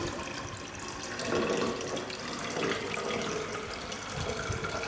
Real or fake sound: real